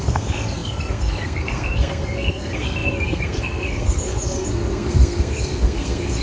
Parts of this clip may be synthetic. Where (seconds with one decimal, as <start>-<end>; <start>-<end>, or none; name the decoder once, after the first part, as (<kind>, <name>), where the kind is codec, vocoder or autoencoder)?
0.0-6.2 (codec, SNAC)